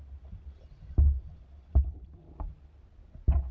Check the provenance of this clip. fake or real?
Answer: real